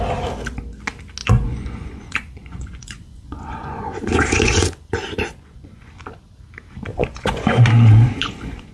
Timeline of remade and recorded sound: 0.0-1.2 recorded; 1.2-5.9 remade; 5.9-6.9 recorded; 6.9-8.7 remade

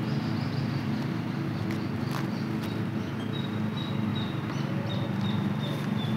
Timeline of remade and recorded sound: 0.0-6.2 recorded

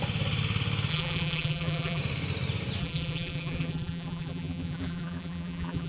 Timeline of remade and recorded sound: 0.0-0.9 recorded; 0.9-2.0 remade; 2.0-2.8 recorded; 2.8-5.9 remade

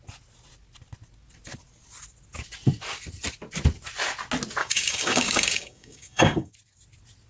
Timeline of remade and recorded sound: 0.0-4.6 recorded; 4.6-6.5 remade; 6.5-7.3 recorded

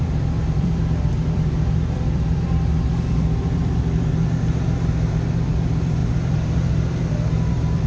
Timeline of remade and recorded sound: 0.0-7.9 remade